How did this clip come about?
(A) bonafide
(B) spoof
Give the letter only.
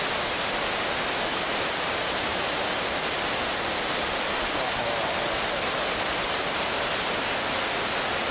A